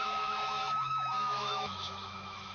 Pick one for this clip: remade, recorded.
remade